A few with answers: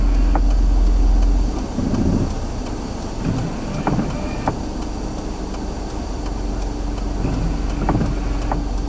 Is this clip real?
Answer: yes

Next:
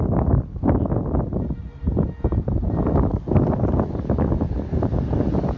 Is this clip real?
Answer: yes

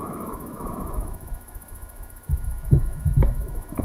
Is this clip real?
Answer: no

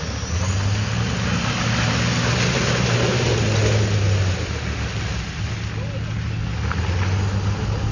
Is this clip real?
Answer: yes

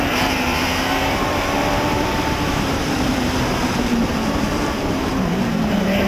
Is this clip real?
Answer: no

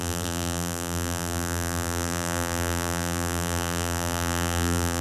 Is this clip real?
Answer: no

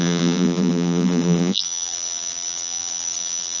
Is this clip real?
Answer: no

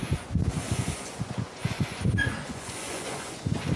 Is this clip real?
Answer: no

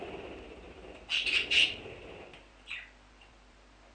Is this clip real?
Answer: yes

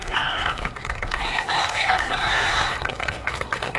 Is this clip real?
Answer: no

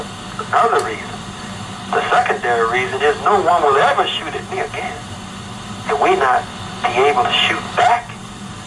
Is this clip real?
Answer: yes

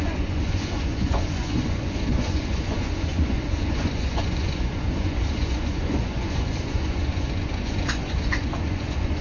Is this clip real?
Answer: no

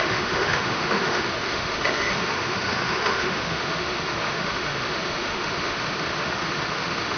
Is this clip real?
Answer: no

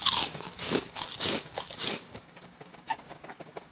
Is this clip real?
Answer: no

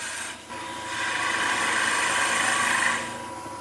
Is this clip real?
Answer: yes